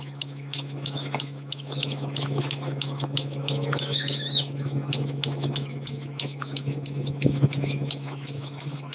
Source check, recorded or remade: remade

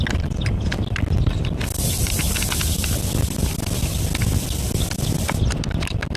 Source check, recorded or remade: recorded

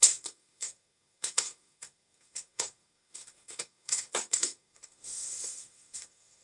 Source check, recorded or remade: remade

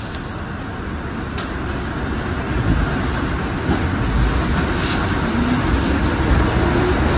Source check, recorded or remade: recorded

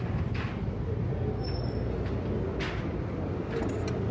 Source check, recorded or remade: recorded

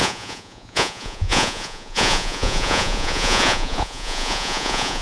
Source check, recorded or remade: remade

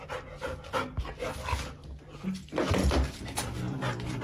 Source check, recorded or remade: recorded